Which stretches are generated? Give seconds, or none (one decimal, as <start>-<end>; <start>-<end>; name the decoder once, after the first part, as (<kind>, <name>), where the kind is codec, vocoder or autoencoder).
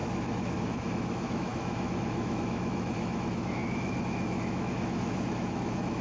0.0-6.0 (autoencoder, DAC-VAE)